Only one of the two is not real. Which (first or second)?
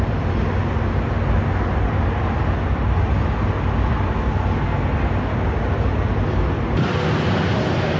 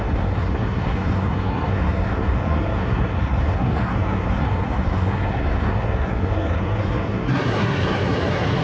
second